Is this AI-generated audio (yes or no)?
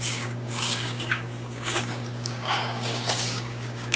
yes